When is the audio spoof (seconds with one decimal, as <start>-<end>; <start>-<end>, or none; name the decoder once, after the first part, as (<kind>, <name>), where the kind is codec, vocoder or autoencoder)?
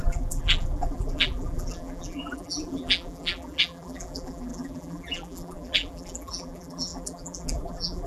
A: 0.0-8.1 (vocoder, BigVGAN v2)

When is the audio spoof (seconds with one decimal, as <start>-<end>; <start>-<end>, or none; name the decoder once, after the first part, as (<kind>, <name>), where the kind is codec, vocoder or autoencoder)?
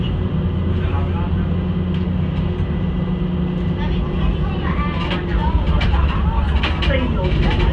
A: 5.4-6.6 (vocoder, BigVGAN v2)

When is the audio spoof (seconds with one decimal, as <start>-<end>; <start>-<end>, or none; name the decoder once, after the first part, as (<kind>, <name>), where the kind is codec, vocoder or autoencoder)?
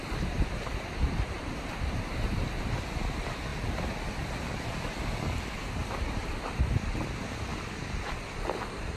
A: 0.0-2.4 (vocoder, BigVGAN v2); 5.8-6.6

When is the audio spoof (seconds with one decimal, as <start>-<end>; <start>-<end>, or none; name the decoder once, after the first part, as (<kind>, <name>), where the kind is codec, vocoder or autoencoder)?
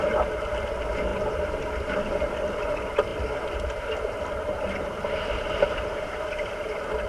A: 1.1-2.5 (vocoder, BigVGAN v2)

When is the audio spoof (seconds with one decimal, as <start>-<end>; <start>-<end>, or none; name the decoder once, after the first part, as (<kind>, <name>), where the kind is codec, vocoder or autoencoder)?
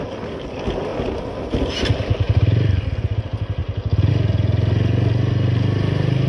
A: 0.9-1.7 (vocoder, BigVGAN v2)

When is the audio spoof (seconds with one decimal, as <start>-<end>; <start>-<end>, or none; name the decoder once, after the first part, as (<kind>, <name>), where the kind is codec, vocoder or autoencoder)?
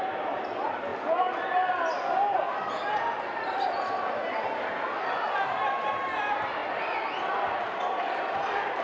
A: 0.0-0.9 (vocoder, BigVGAN v2); 6.0-6.6; 7.6-8.8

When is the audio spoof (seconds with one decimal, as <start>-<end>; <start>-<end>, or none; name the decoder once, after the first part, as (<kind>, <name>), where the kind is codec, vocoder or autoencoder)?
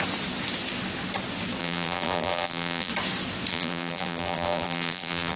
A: 1.6-2.9 (vocoder, BigVGAN v2); 3.5-5.4